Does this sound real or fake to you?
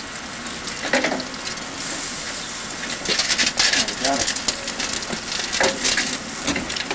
real